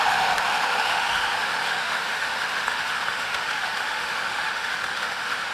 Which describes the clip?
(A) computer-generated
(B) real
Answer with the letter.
A